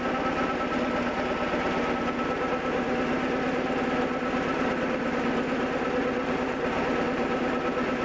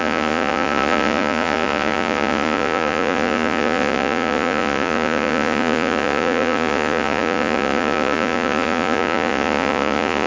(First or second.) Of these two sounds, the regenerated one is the second